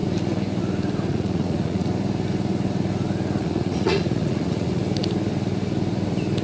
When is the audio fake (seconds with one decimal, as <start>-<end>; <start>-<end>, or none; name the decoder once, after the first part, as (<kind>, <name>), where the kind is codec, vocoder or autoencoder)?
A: 1.1-1.9 (vocoder, Vocos); 3.4-4.8